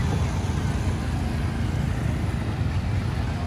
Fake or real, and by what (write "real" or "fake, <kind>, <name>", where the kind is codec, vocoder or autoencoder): real